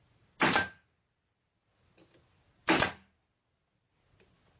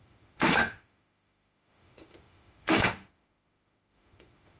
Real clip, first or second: first